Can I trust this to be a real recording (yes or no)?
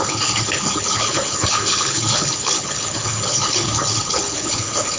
no